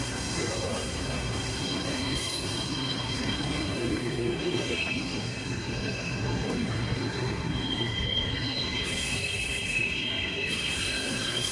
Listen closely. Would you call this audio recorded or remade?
remade